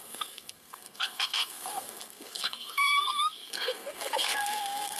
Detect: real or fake fake